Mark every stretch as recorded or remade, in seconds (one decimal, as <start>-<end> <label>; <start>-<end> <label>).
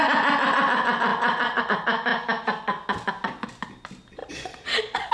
0.0-4.2 recorded; 4.2-5.1 remade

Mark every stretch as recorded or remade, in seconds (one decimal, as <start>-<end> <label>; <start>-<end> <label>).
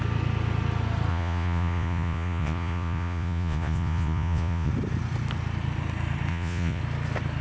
0.0-1.1 recorded; 1.1-4.7 remade; 4.7-6.3 recorded; 6.3-6.8 remade; 6.8-7.4 recorded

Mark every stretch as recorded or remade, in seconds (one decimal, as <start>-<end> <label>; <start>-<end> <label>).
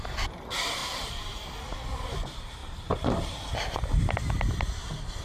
0.0-0.8 recorded; 0.8-1.5 remade; 1.5-2.6 recorded; 2.6-3.5 remade; 3.5-5.2 recorded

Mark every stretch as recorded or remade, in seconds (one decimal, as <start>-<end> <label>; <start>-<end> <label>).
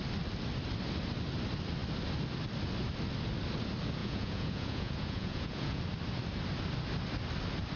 0.0-4.0 recorded; 4.0-5.8 remade; 5.8-7.8 recorded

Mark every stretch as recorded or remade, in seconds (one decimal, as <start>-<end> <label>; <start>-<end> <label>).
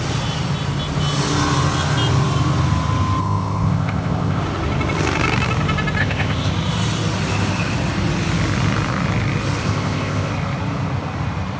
0.0-3.2 recorded; 3.2-4.4 remade; 4.4-6.0 recorded; 6.0-6.5 remade; 6.5-9.6 recorded; 9.6-10.3 remade; 10.3-11.6 recorded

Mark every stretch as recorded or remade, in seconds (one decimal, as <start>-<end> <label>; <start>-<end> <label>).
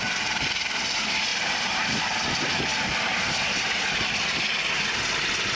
0.0-1.3 recorded; 1.3-2.0 remade; 2.0-5.5 recorded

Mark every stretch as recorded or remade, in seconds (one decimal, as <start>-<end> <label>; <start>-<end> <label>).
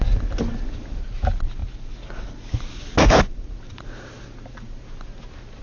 0.0-5.6 recorded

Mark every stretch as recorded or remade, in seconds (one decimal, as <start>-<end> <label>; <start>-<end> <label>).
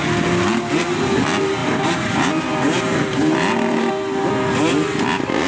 0.0-1.6 recorded; 1.6-3.9 remade; 3.9-5.5 recorded